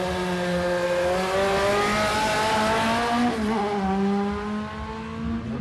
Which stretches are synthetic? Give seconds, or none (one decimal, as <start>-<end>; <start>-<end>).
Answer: none